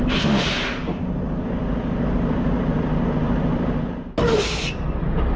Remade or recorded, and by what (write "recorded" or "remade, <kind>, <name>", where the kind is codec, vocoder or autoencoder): recorded